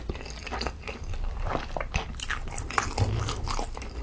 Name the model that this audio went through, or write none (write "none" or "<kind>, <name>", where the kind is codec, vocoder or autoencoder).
none